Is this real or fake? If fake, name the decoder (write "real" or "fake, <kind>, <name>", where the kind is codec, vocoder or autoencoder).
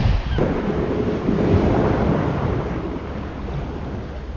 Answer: real